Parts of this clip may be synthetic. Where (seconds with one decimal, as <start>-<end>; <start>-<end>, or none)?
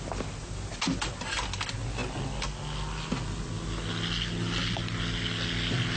none